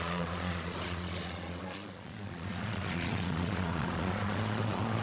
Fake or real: fake